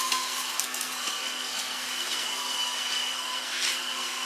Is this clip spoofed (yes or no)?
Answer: yes